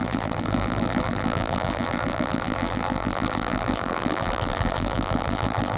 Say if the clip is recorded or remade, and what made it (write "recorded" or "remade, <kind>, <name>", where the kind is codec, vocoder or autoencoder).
remade, vocoder, BigVGAN v2